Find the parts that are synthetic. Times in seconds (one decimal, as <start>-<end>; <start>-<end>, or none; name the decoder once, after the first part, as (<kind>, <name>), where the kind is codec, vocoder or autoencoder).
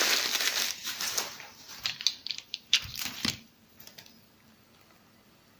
0.8-3.9 (vocoder, BigVGAN v2)